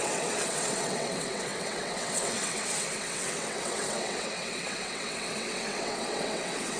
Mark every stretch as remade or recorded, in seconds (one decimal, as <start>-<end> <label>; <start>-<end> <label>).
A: 0.0-6.8 remade